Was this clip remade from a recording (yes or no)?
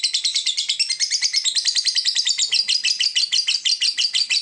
no